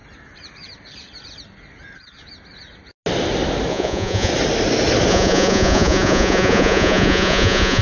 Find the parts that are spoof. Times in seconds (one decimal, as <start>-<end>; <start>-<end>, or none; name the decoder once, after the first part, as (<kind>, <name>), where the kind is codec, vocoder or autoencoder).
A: 3.7-4.3 (vocoder, Vocos); 5.1-7.8